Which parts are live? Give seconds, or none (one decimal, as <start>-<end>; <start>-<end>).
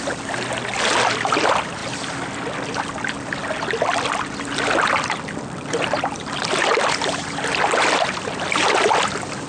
0.0-9.5